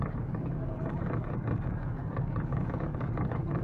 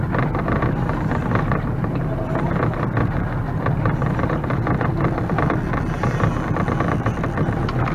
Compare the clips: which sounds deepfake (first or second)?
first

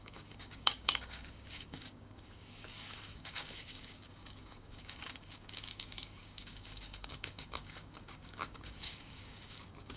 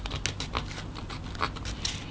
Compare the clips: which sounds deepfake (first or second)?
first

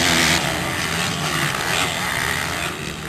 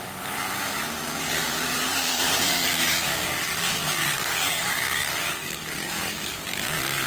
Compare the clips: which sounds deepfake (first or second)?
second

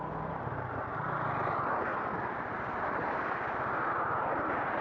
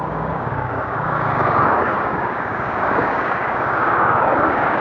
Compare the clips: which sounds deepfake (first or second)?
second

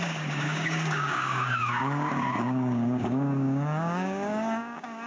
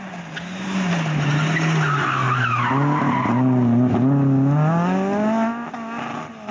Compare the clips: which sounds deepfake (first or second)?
first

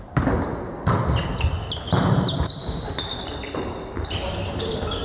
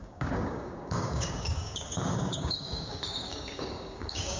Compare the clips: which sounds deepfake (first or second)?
second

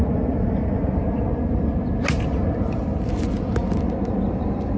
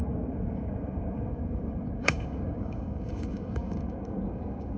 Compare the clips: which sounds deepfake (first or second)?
second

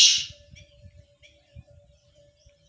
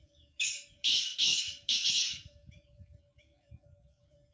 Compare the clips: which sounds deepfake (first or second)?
second